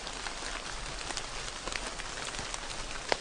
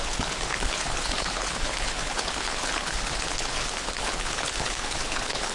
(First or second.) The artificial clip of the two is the second